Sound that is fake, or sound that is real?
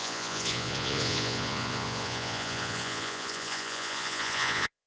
fake